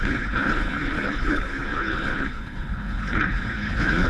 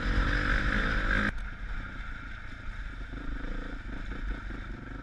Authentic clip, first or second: second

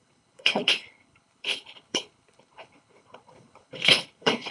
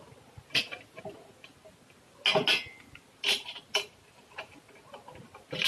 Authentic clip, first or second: second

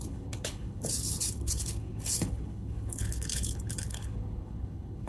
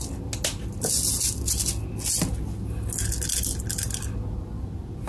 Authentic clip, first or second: second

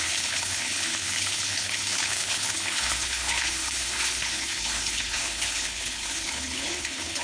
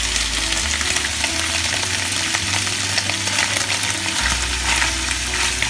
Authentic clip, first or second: second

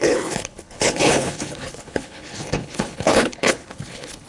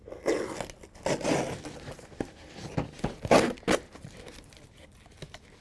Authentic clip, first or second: second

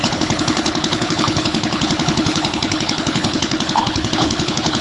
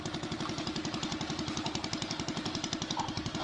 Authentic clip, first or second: second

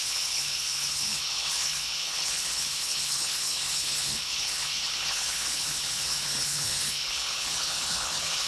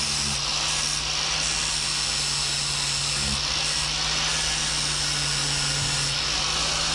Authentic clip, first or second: second